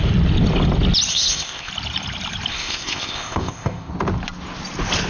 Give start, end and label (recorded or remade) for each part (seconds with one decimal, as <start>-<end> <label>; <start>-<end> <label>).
0.0-1.1 recorded; 1.1-1.7 remade; 1.7-2.5 recorded; 2.5-3.9 remade; 3.9-5.1 recorded